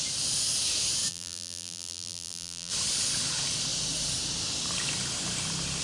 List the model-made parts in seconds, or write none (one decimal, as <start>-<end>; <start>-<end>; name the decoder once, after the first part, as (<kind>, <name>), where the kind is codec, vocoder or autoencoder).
1.1-2.7 (vocoder, BigVGAN v2)